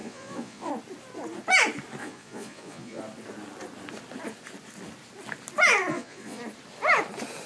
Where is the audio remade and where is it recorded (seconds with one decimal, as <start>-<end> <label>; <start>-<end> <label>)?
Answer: 0.0-0.7 remade; 0.7-2.0 recorded; 2.0-3.0 remade; 3.0-5.9 recorded; 5.9-6.4 remade; 6.4-7.5 recorded